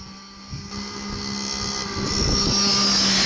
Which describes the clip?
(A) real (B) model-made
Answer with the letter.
A